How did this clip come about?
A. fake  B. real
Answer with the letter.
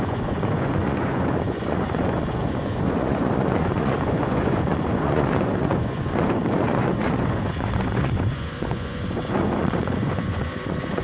A